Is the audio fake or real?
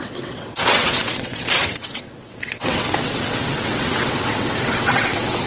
fake